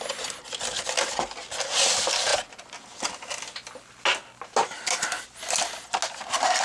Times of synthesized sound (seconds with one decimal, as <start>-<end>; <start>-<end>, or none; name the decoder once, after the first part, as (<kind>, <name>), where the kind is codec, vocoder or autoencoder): none